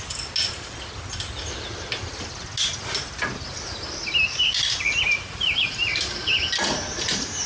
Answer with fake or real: real